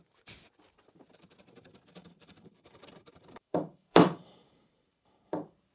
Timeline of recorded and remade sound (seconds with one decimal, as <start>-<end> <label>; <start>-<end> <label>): 0.0-2.0 recorded; 2.0-5.7 remade

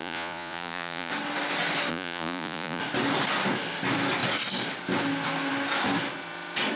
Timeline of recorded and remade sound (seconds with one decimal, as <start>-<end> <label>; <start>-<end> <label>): 0.0-1.1 remade; 1.1-1.9 recorded; 1.9-2.8 remade; 2.8-6.8 recorded

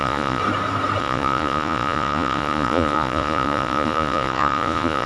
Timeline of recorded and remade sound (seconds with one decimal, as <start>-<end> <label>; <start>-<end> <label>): 0.0-0.4 remade; 0.4-1.0 recorded; 1.0-5.1 remade

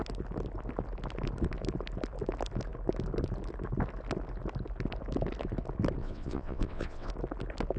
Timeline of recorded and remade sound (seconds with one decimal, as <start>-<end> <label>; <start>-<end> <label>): 0.0-6.0 recorded; 6.0-7.1 remade; 7.1-7.8 recorded